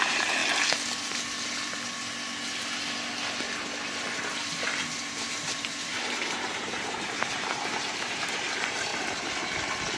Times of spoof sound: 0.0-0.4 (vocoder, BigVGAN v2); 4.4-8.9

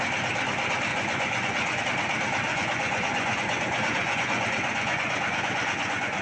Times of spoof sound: 0.9-1.8 (vocoder, Vocos); 2.5-6.2

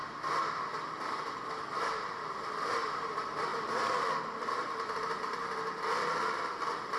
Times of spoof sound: none